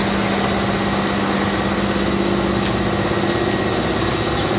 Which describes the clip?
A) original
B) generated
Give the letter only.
A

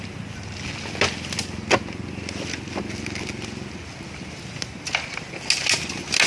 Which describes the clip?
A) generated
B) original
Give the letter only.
B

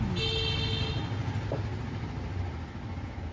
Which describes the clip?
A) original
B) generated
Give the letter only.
A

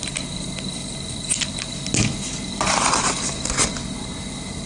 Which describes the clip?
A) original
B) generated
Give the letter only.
A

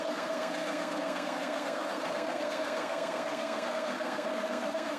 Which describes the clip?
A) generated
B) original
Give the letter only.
A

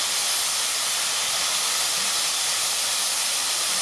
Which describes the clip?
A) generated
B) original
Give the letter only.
B